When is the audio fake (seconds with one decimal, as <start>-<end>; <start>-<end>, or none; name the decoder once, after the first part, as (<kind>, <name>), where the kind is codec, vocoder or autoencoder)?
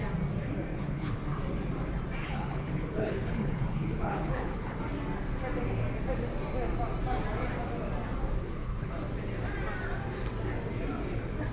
0.7-1.2 (codec, HILCodec); 2.2-4.8; 8.4-8.9